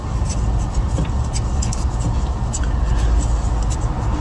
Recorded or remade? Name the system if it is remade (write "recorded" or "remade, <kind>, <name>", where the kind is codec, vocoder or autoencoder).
recorded